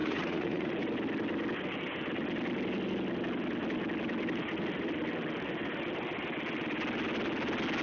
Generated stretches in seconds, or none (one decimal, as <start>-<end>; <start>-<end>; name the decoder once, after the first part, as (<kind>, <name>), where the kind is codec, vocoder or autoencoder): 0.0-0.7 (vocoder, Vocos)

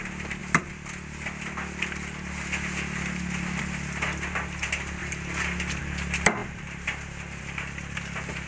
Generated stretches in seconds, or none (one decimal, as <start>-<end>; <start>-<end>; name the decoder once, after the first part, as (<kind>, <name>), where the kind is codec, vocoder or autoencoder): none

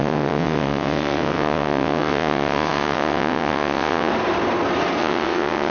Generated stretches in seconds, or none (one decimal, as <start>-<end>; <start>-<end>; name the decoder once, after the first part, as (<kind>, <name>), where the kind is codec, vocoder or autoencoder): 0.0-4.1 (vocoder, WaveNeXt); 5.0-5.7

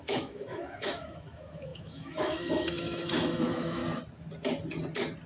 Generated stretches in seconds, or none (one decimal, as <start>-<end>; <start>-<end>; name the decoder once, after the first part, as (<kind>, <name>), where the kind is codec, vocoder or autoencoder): 0.0-3.8 (autoencoder, DAC-VAE)

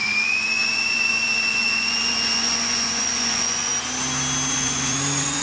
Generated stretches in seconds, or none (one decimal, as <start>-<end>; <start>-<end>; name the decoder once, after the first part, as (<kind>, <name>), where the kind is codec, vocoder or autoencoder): 0.0-3.7 (vocoder, Vocos); 4.5-5.4